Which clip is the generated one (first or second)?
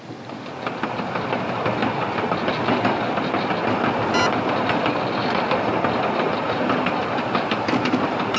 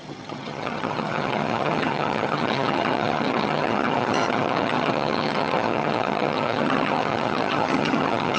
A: second